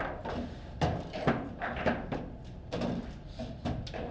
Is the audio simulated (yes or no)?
no